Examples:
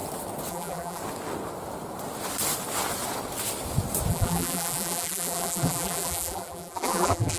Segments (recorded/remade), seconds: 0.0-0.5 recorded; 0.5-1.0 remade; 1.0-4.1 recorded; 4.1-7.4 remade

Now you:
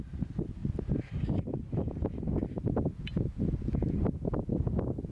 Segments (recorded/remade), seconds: 0.0-5.1 recorded

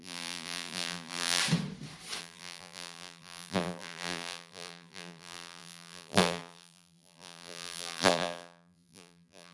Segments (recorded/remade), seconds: 0.0-1.4 remade; 1.4-2.2 recorded; 2.2-9.5 remade

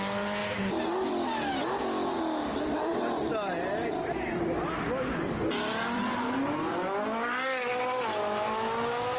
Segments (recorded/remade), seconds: 0.0-2.5 recorded; 2.5-4.3 remade; 4.3-5.4 recorded; 5.4-6.0 remade; 6.0-9.2 recorded

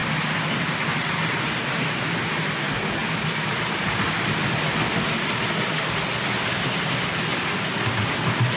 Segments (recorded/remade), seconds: 0.0-0.9 remade; 0.9-3.0 recorded; 3.0-4.7 remade; 4.7-8.6 recorded